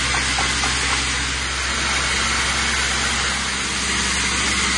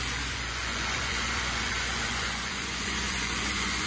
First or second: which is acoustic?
first